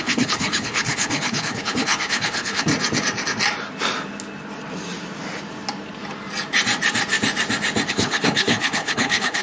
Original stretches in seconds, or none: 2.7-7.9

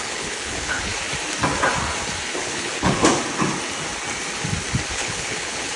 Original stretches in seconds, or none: 0.9-2.4; 3.0-4.9